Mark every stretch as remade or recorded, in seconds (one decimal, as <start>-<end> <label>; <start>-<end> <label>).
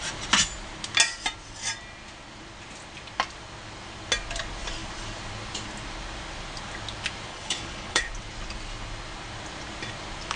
0.0-7.3 recorded; 7.3-8.1 remade; 8.1-10.4 recorded